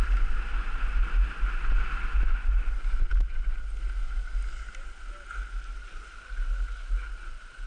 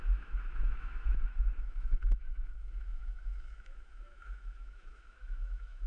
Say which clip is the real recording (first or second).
first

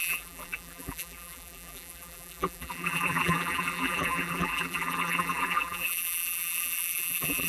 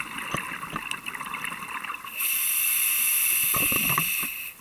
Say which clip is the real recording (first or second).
second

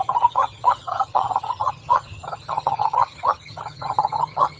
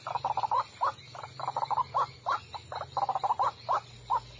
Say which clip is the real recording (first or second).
second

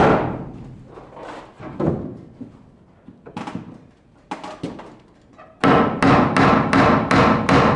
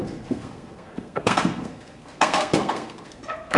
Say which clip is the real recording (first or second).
first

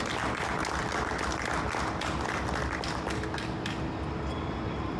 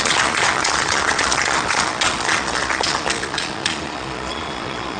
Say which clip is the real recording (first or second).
first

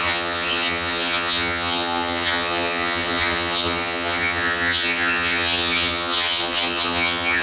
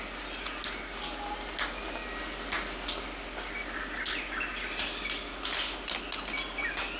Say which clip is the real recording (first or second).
second